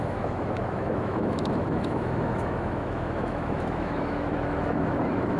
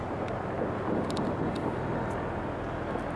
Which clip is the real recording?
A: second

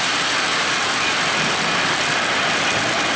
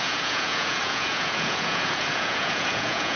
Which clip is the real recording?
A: first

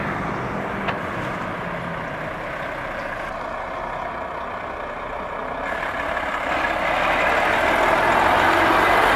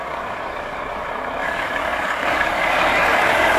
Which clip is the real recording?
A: first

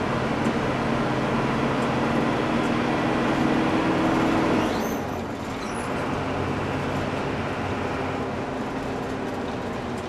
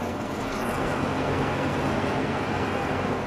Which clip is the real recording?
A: first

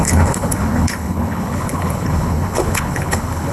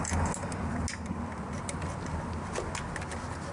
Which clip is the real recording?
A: second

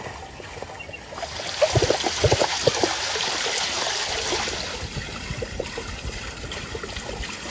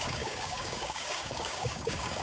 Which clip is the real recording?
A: first